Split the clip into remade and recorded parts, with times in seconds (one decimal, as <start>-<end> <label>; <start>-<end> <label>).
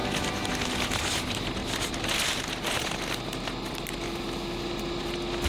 0.0-5.5 recorded